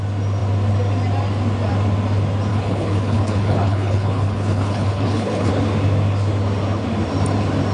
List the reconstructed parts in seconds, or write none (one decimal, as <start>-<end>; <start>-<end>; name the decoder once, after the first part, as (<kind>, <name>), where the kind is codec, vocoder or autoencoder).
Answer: 2.5-5.5 (codec, HILCodec)